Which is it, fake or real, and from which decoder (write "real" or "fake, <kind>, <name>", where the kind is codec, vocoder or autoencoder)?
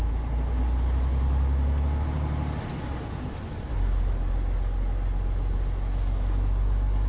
real